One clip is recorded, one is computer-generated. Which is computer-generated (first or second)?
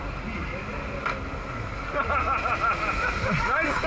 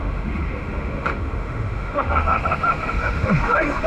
second